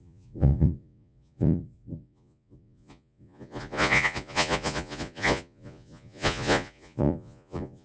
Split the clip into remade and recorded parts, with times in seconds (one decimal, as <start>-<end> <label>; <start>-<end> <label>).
0.0-7.8 remade